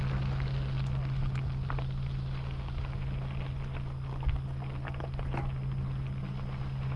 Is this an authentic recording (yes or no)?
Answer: yes